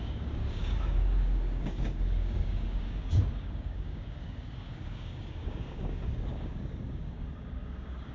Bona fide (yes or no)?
no